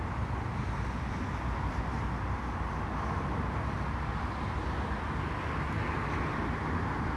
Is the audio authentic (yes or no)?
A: yes